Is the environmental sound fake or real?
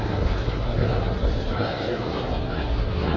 fake